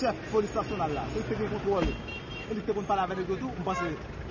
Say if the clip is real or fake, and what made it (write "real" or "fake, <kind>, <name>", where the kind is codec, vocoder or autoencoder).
real